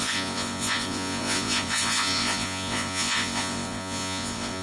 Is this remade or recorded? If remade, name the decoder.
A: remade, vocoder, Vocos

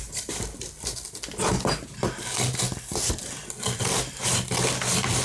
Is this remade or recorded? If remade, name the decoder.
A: recorded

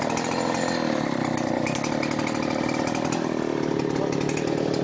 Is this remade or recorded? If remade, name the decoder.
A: recorded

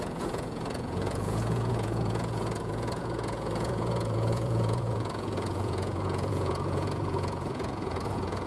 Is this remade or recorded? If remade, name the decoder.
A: remade, vocoder, Vocos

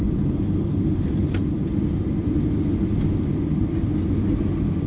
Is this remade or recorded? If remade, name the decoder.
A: recorded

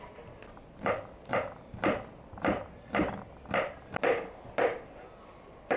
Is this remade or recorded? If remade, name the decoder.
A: recorded